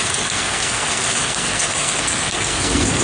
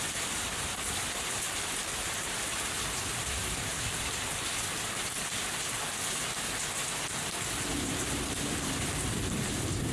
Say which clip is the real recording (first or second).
second